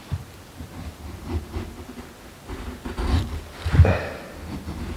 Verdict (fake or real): real